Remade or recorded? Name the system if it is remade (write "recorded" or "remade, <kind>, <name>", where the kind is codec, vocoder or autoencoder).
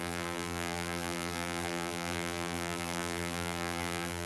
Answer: remade, vocoder, BigVGAN v2